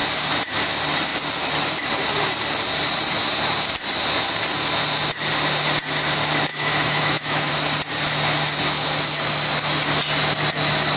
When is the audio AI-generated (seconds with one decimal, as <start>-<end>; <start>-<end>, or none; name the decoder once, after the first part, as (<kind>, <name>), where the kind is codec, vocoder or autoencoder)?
6.5-7.5 (autoencoder, DAC-VAE)